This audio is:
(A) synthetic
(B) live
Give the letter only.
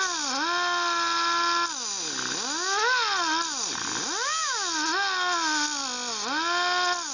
B